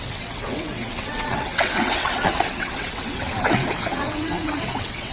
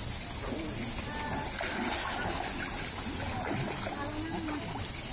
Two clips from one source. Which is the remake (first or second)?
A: first